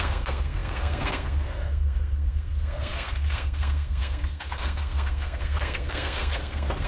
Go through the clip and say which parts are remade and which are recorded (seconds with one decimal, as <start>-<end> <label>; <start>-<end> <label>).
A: 0.0-6.9 remade